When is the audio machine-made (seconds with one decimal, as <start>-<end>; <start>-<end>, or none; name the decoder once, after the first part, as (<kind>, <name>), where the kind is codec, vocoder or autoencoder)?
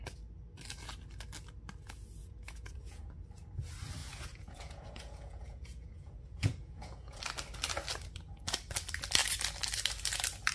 2.2-3.1 (vocoder, Vocos); 4.0-7.2